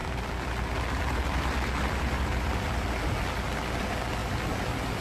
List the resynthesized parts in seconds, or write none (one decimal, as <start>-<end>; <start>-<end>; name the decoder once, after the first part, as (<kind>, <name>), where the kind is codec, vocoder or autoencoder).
0.0-3.0 (vocoder, BigVGAN v2)